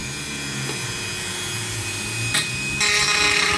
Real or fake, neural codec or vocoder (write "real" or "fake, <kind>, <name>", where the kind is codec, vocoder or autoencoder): real